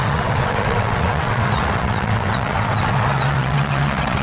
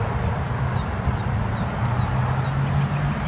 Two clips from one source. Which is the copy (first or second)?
first